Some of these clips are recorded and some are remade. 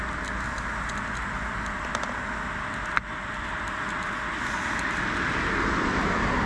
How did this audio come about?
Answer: recorded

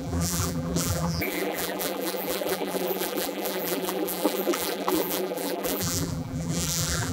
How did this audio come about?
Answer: remade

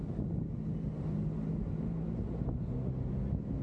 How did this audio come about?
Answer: recorded